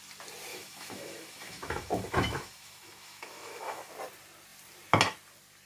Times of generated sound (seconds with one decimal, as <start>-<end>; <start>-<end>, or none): 0.5-3.9